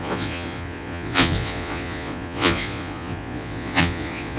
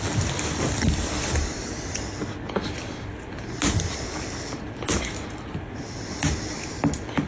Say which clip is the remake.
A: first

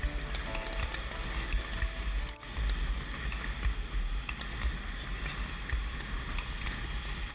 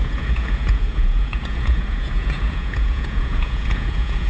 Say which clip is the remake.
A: second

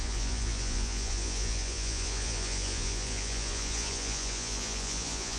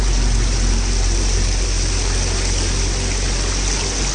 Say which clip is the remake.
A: first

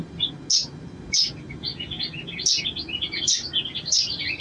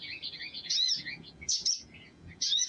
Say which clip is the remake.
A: second